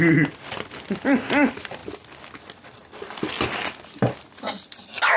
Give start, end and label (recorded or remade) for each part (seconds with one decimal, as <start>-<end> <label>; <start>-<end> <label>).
0.0-5.2 recorded